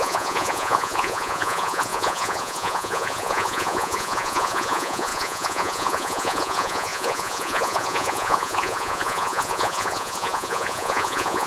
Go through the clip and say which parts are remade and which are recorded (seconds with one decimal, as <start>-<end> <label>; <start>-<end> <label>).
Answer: 0.0-11.5 remade